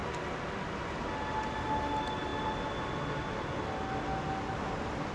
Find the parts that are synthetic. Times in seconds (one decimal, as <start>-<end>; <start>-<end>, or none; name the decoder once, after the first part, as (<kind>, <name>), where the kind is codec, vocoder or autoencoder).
none